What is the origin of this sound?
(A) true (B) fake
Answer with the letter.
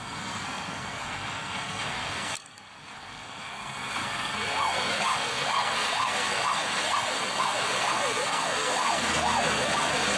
B